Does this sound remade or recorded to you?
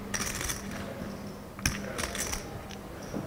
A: recorded